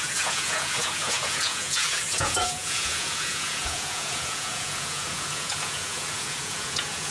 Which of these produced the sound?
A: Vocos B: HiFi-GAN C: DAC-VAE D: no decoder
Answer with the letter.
A